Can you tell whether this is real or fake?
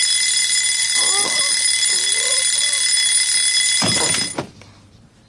fake